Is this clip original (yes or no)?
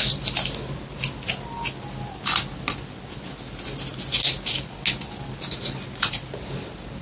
yes